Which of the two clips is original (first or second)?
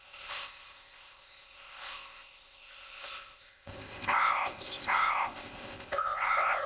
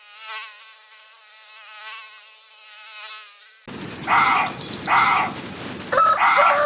second